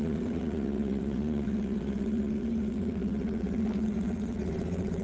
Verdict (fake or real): fake